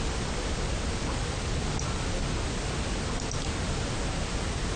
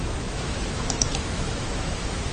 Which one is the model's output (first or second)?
second